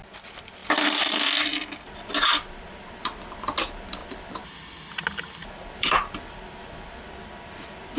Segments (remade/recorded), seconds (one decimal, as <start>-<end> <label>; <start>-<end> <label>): 0.0-0.6 recorded; 0.6-1.7 remade; 1.7-2.3 recorded; 2.3-3.0 remade; 3.0-4.0 recorded; 4.0-8.0 remade